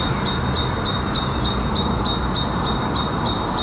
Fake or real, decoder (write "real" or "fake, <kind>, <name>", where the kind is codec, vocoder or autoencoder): real